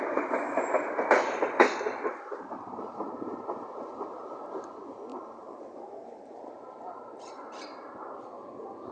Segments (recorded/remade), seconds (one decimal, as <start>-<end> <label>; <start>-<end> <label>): 0.0-1.2 recorded; 1.2-4.3 remade; 4.3-5.1 recorded; 5.1-6.5 remade; 6.5-6.9 recorded; 6.9-7.7 remade; 7.7-8.9 recorded